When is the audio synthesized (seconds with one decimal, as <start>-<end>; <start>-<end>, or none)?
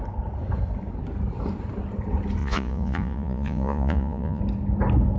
2.4-4.4